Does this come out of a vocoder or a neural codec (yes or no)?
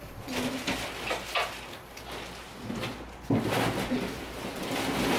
no